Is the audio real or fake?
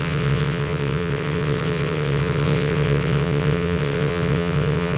fake